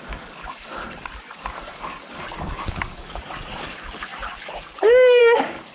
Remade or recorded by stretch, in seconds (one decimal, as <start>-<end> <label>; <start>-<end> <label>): 0.0-0.8 remade; 0.8-1.3 recorded; 1.3-5.7 remade